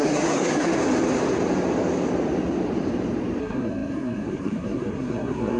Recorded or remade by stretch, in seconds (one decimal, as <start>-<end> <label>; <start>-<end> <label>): 0.0-0.7 remade; 0.7-3.4 recorded; 3.4-5.6 remade